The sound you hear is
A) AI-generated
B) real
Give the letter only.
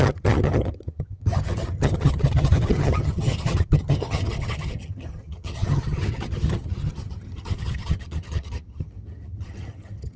A